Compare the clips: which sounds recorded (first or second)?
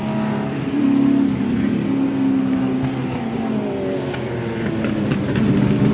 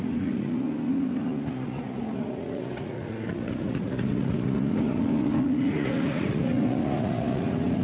first